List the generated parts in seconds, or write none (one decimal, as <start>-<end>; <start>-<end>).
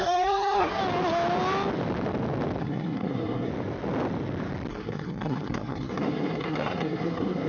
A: 0.0-0.8; 2.6-3.5; 4.7-7.5